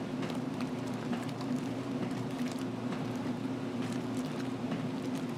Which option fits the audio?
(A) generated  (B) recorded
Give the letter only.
A